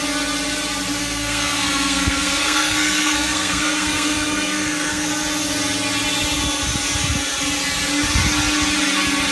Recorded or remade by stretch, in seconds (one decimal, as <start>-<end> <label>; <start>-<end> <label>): 0.0-1.0 recorded; 1.0-5.1 remade; 5.1-9.3 recorded